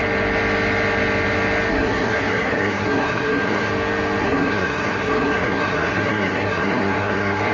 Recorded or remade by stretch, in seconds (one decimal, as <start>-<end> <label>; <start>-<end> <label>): 0.0-1.7 recorded; 1.7-3.7 remade; 3.7-4.2 recorded; 4.2-7.5 remade